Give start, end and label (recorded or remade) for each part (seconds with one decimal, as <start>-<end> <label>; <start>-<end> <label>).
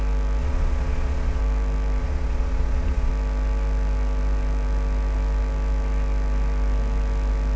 0.0-0.4 recorded; 0.4-1.4 remade; 1.4-2.0 recorded; 2.0-3.1 remade; 3.1-7.6 recorded